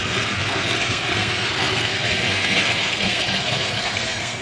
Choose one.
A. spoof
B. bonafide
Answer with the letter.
A